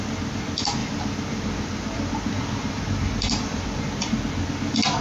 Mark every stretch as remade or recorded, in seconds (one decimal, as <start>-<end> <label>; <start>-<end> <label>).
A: 0.0-0.8 recorded; 0.8-3.8 remade; 3.8-5.0 recorded